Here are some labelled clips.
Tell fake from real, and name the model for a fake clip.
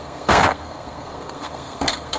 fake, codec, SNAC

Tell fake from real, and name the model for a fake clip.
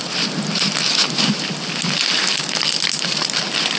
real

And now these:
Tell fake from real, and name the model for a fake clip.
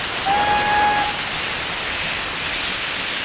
real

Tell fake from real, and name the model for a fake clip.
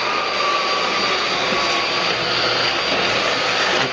real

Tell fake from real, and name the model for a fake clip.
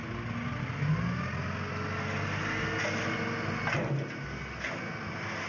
real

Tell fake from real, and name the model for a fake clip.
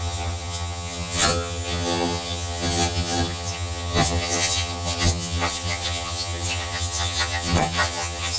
fake, vocoder, HiFi-GAN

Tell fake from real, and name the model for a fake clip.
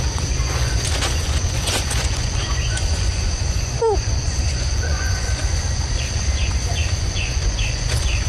fake, vocoder, Vocos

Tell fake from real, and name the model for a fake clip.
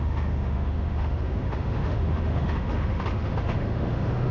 fake, autoencoder, DAC-VAE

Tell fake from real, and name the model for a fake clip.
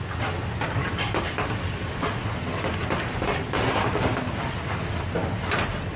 real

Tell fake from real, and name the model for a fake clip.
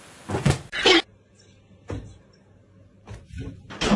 real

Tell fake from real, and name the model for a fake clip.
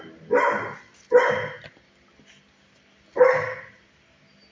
real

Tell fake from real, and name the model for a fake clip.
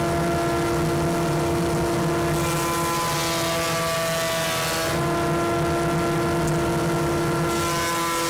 real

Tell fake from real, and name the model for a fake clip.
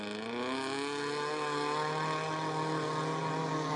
real